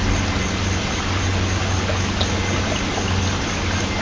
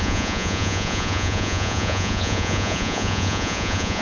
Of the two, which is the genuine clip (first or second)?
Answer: first